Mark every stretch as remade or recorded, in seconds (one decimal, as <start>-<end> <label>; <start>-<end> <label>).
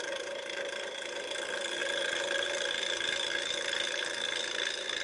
0.0-5.0 recorded